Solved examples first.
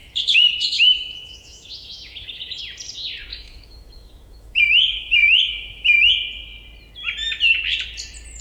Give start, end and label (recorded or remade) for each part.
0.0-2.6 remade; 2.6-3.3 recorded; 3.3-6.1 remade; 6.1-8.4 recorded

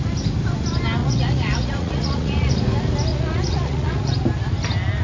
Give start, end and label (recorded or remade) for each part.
0.0-1.0 recorded; 1.0-2.5 remade; 2.5-3.1 recorded; 3.1-4.1 remade; 4.1-5.0 recorded

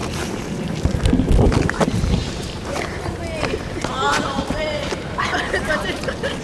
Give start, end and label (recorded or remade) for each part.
0.0-2.2 recorded; 2.2-6.0 remade; 6.0-6.4 recorded

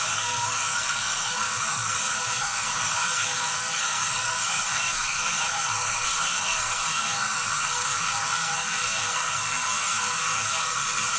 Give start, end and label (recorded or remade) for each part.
0.0-11.2 remade